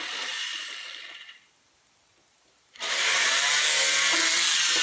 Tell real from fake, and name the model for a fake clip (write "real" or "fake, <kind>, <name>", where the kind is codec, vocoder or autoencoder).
real